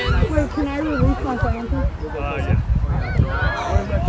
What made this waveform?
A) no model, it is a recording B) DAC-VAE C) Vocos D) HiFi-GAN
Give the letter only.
A